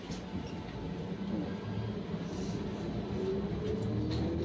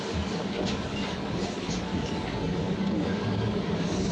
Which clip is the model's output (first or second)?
second